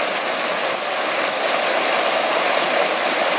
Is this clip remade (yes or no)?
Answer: no